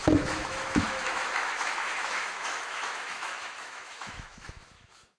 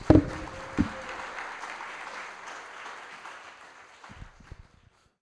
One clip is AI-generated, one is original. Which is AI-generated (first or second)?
first